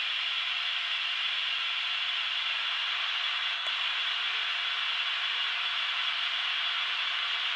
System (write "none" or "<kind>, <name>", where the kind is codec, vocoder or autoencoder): none